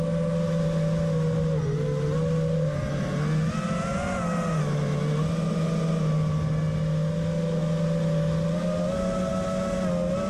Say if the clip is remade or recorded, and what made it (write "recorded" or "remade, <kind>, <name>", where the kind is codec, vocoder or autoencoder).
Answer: recorded